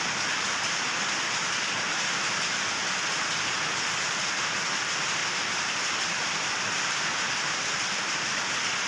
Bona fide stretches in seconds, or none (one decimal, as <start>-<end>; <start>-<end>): 0.0-8.9